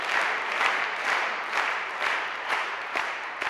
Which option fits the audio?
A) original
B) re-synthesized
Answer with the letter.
B